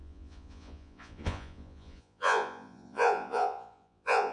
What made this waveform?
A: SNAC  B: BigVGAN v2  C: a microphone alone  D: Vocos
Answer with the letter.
D